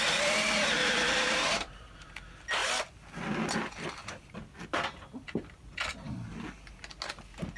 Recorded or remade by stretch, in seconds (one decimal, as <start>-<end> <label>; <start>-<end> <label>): 0.0-0.8 recorded; 0.8-2.1 remade; 2.1-7.6 recorded